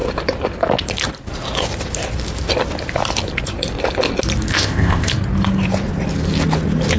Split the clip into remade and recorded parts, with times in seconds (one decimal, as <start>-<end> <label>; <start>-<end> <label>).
0.0-4.5 recorded; 4.5-5.1 remade; 5.1-7.0 recorded